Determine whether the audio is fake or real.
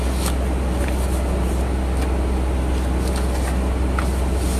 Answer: real